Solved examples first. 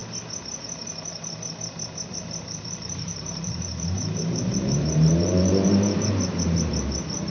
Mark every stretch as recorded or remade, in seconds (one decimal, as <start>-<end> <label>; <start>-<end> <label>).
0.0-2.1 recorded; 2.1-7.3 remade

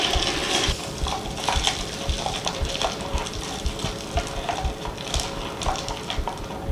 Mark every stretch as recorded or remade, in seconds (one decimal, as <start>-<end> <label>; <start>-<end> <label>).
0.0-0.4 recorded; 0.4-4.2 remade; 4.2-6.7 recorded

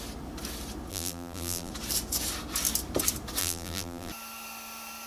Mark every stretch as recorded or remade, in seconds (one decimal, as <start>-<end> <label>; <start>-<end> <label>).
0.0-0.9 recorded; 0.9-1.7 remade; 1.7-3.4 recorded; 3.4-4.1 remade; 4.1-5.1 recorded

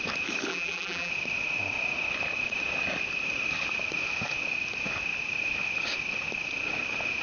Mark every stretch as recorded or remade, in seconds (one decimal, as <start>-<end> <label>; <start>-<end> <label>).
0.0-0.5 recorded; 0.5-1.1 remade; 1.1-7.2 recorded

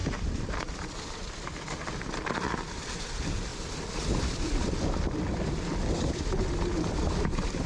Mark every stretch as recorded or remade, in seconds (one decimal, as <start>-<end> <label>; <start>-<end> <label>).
0.0-2.8 remade; 2.8-3.5 recorded; 3.5-7.7 remade